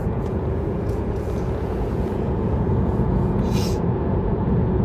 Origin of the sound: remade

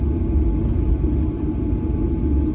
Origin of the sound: recorded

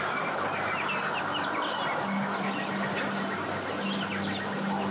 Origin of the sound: recorded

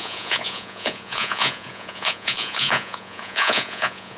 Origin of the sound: remade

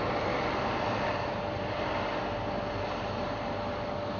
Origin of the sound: recorded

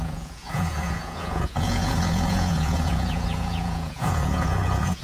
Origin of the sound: remade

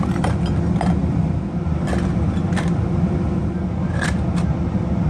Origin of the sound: recorded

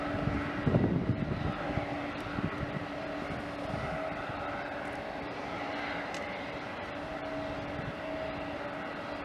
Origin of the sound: recorded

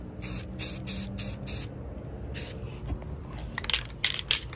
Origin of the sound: recorded